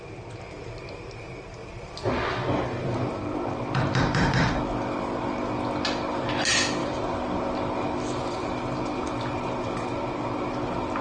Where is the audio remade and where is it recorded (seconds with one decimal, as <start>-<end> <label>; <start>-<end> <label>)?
0.0-1.6 recorded; 1.6-4.6 remade; 4.6-6.8 recorded; 6.8-7.4 remade; 7.4-8.4 recorded; 8.4-9.1 remade; 9.1-11.0 recorded